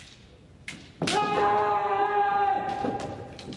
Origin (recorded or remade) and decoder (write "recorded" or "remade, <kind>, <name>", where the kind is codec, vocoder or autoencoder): recorded